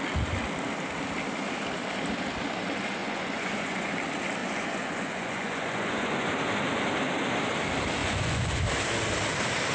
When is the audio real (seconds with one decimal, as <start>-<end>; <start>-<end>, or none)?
0.0-3.0; 3.9-4.4; 6.3-8.0; 8.6-9.7